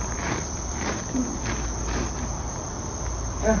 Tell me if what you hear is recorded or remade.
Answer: recorded